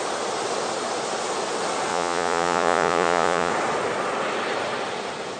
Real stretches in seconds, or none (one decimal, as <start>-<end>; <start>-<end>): 0.0-1.9; 3.5-5.4